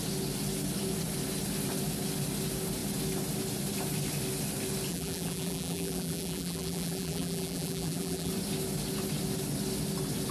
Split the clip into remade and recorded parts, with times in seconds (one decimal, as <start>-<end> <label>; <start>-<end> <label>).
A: 0.0-4.9 recorded; 4.9-8.3 remade; 8.3-10.3 recorded

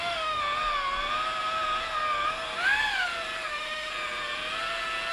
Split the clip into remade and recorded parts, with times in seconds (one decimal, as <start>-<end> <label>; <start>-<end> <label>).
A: 0.0-0.4 remade; 0.4-3.5 recorded; 3.5-3.9 remade; 3.9-5.1 recorded